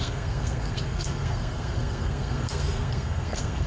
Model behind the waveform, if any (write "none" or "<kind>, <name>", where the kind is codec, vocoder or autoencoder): codec, SNAC